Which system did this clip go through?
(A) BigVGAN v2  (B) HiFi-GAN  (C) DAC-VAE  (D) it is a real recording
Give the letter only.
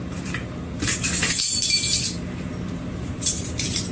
A